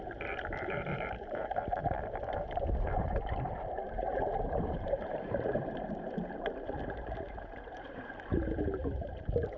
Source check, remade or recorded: remade